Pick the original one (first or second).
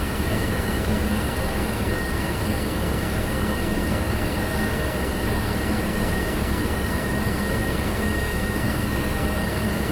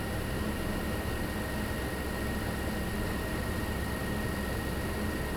second